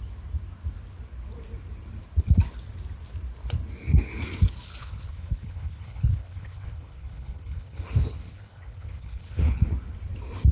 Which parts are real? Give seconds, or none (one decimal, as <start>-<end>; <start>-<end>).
0.0-4.8; 9.6-10.5